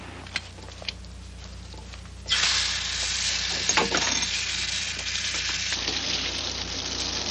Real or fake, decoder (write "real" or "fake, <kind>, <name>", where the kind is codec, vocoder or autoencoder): real